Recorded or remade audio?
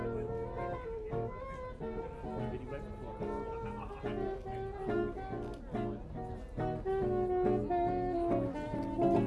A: recorded